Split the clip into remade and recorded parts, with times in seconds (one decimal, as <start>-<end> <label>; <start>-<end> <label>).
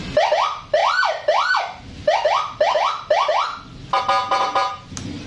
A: 0.0-5.3 recorded